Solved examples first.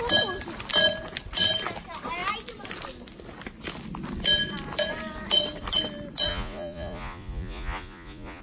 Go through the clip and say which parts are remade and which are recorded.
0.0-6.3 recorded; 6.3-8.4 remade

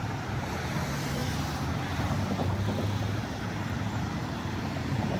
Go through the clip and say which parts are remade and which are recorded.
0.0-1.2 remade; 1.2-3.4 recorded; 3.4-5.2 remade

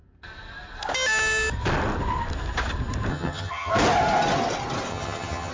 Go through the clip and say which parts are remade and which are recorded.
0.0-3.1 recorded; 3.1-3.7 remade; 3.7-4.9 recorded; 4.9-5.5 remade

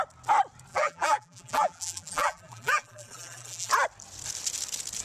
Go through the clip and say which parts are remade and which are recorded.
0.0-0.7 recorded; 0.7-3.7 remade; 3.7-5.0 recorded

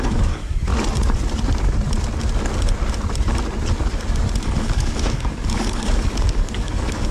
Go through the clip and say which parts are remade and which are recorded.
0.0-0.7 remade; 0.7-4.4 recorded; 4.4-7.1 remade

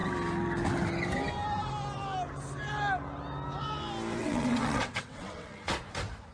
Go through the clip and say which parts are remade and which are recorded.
0.0-4.2 recorded; 4.2-5.7 remade; 5.7-6.3 recorded